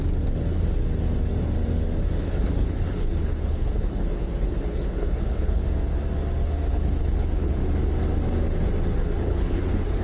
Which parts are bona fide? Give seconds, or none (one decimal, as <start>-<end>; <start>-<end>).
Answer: 0.0-2.2; 5.6-6.7; 7.6-9.0

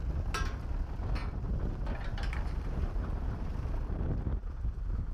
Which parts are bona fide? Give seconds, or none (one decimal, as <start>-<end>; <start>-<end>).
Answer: 0.0-5.1

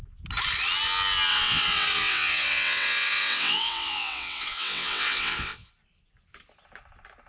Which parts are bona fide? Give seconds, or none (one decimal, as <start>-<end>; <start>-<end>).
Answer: 0.0-1.3; 5.7-7.3

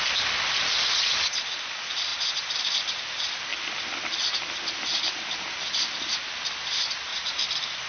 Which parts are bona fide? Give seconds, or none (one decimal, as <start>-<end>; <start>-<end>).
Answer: 0.0-7.1